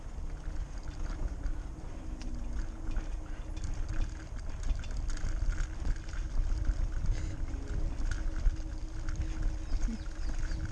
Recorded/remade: recorded